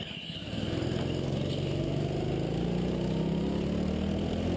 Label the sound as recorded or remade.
recorded